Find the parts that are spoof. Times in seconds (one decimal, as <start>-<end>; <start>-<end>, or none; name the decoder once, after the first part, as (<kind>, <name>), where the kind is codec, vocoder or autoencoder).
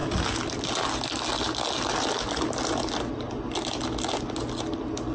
none